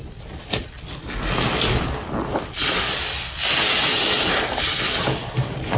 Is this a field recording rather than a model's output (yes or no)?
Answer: yes